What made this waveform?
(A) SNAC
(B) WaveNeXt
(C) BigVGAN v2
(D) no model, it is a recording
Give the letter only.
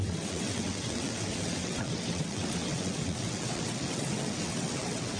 B